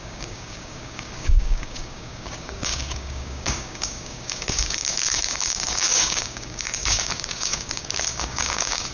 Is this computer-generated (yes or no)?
yes